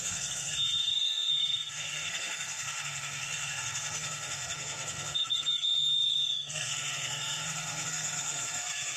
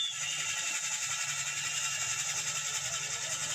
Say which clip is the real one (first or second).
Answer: second